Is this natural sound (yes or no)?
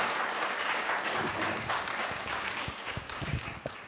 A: no